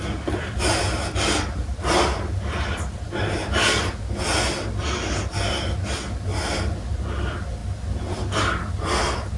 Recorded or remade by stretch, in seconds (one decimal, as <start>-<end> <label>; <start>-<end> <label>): 0.0-9.4 recorded